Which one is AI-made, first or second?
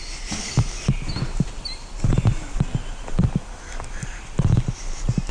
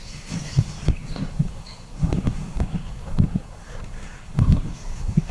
second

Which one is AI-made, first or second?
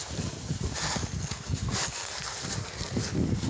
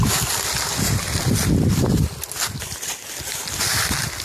first